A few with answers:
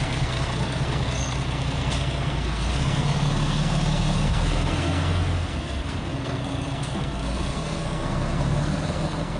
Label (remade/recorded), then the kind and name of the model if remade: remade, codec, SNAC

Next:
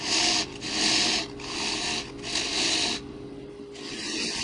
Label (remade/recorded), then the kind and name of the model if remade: recorded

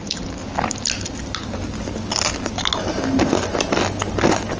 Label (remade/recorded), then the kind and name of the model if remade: recorded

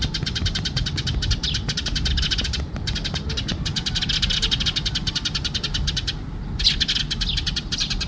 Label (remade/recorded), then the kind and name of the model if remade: recorded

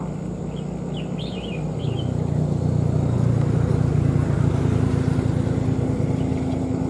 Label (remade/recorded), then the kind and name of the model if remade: recorded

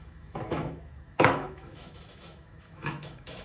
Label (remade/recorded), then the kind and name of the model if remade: remade, autoencoder, DAC-VAE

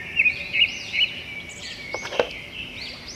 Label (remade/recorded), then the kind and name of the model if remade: recorded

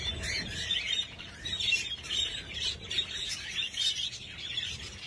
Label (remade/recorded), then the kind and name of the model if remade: remade, vocoder, BigVGAN v2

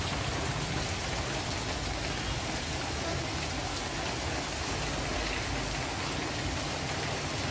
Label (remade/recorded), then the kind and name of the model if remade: recorded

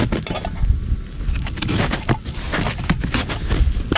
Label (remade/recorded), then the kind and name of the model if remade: recorded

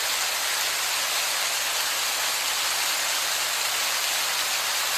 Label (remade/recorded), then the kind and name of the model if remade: recorded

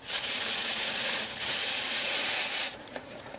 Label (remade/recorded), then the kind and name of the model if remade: remade, vocoder, Vocos